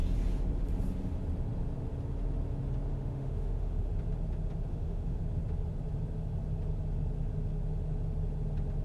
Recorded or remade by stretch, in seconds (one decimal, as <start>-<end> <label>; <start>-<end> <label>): 0.0-2.9 recorded; 2.9-3.9 remade; 3.9-4.7 recorded; 4.7-5.2 remade; 5.2-8.8 recorded